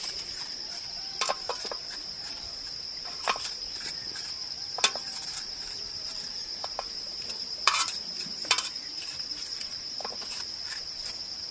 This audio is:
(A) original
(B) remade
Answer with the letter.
B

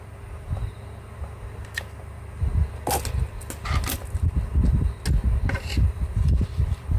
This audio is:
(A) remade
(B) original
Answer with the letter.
B